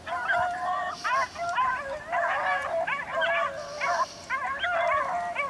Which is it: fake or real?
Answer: real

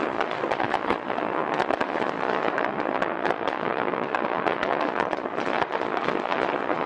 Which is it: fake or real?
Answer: fake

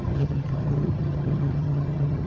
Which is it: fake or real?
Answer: fake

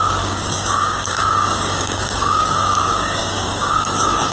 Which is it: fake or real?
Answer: fake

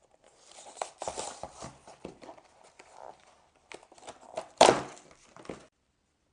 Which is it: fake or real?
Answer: real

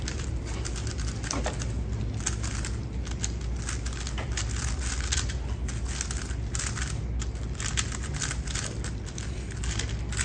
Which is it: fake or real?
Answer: real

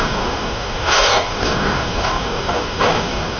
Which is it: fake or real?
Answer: fake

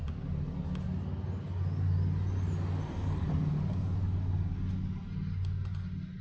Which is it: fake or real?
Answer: real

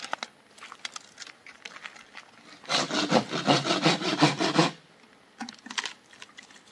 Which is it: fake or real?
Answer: real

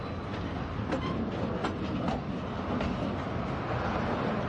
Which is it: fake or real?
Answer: real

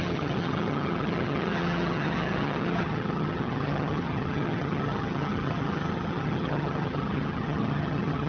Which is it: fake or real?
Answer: fake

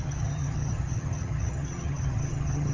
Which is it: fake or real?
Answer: fake